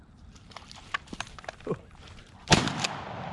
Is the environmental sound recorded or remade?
recorded